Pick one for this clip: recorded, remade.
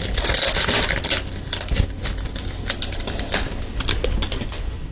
recorded